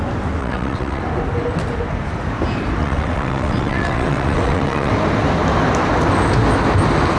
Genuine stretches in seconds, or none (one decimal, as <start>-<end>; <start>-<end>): 0.0-0.4; 1.0-2.8; 4.9-7.2